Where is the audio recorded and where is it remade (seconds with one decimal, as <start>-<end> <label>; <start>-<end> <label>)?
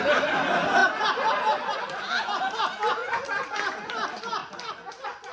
0.0-5.3 recorded